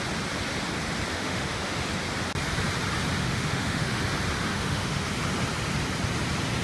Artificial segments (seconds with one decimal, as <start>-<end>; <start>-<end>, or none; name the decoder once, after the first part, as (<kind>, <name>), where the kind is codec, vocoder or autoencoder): 1.1-1.9 (autoencoder, DAC-VAE); 3.2-4.0; 4.5-5.1